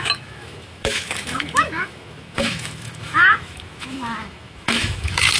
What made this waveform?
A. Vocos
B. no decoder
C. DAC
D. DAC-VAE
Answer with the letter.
D